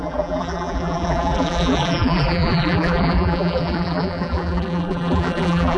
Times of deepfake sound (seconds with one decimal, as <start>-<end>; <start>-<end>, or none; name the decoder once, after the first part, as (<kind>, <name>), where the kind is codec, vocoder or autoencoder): 0.0-5.8 (vocoder, BigVGAN v2)